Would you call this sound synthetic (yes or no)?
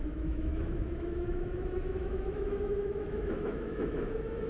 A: yes